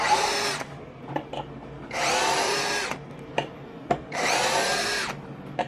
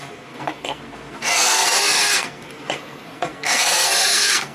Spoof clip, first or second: second